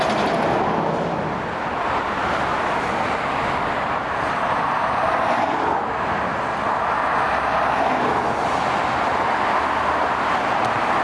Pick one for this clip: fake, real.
real